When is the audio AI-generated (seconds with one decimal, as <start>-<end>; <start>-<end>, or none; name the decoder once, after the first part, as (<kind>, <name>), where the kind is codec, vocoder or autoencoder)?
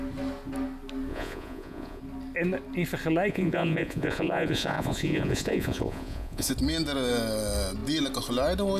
1.1-2.0 (vocoder, Vocos); 3.3-6.5